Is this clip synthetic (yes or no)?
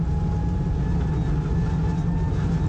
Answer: no